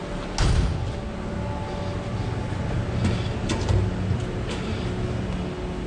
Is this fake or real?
real